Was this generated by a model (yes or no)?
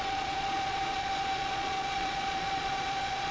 yes